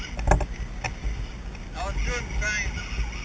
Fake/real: real